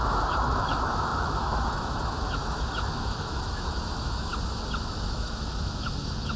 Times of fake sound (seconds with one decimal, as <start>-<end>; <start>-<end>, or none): 0.0-4.3; 4.8-6.4